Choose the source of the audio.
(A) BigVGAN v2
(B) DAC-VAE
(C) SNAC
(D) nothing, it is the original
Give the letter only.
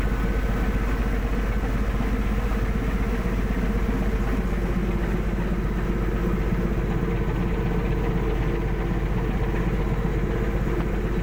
D